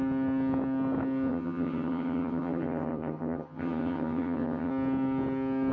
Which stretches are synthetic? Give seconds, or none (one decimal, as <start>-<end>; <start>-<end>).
1.3-4.7